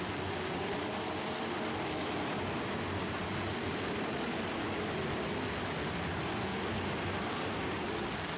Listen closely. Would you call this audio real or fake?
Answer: real